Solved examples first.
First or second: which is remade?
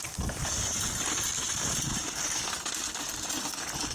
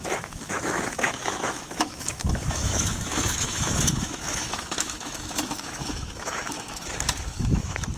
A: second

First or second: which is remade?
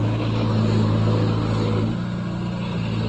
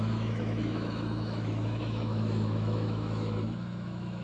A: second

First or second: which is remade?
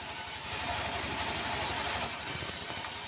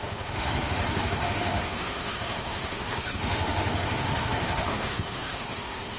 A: second